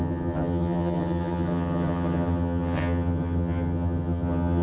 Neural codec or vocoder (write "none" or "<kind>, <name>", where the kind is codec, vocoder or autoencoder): vocoder, HiFi-GAN